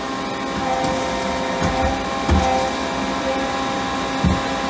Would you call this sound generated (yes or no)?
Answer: no